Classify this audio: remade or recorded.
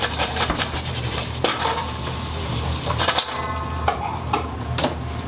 remade